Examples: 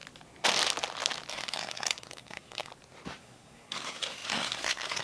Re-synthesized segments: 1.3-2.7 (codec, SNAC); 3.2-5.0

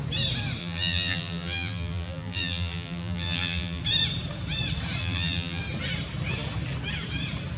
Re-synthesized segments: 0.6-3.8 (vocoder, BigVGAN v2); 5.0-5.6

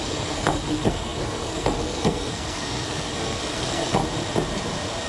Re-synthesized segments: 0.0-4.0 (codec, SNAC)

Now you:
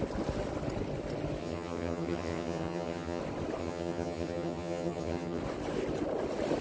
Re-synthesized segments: 1.4-3.2 (vocoder, HiFi-GAN); 3.6-5.4